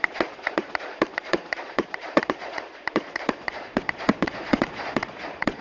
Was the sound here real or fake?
fake